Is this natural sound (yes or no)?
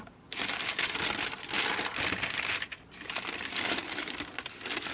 yes